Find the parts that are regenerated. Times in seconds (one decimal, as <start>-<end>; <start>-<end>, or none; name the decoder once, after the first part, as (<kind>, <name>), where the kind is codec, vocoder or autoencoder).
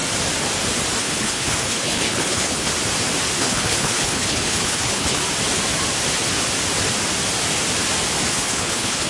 1.0-2.7 (codec, HILCodec); 3.4-5.2; 8.3-9.1